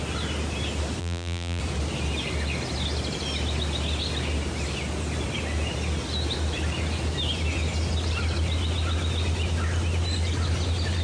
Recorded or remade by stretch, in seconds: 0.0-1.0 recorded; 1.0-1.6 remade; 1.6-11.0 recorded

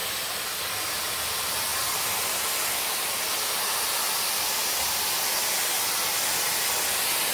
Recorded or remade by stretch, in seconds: 0.0-7.3 recorded

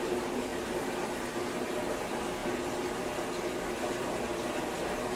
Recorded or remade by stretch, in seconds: 0.0-5.2 recorded

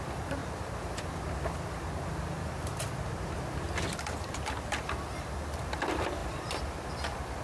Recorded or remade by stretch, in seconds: 0.0-0.4 remade; 0.4-4.2 recorded; 4.2-7.4 remade

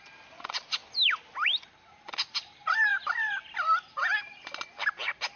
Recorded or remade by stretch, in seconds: 0.0-0.8 remade; 0.8-2.3 recorded; 2.3-2.9 remade; 2.9-4.9 recorded; 4.9-5.4 remade

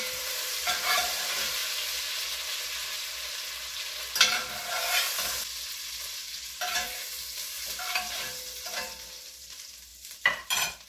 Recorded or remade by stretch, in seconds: 0.0-1.6 remade; 1.6-6.7 recorded; 6.7-10.9 remade

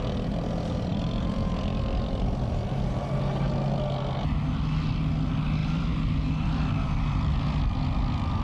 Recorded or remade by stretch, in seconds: 0.0-0.9 recorded; 0.9-3.3 remade; 3.3-8.4 recorded